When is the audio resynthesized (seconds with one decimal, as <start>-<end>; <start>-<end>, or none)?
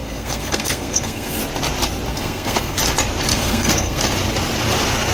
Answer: 0.0-1.4; 2.1-2.8; 3.3-4.0